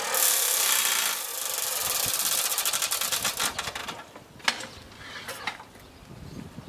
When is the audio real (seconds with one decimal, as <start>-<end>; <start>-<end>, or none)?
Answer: 0.0-6.7